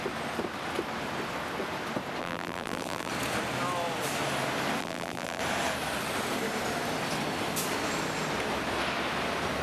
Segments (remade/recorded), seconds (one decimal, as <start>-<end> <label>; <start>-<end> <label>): 0.0-2.2 recorded; 2.2-3.1 remade; 3.1-4.8 recorded; 4.8-5.4 remade; 5.4-9.6 recorded